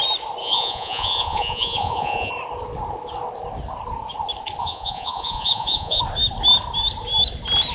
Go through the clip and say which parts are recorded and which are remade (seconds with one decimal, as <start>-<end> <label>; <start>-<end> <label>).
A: 0.0-0.4 recorded; 0.4-2.3 remade; 2.3-4.6 recorded; 4.6-6.0 remade; 6.0-7.7 recorded